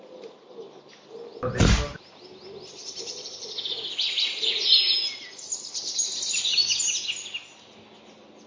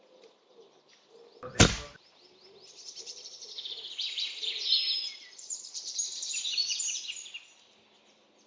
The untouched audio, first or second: first